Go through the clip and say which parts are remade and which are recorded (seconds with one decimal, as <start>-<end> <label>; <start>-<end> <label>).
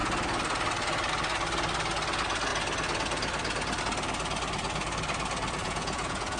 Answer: 0.0-5.6 recorded; 5.6-6.4 remade